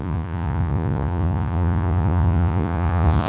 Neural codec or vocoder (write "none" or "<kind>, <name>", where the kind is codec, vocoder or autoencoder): vocoder, Vocos